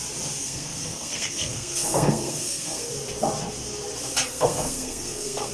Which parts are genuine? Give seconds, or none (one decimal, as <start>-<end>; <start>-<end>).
0.0-0.4; 2.9-4.3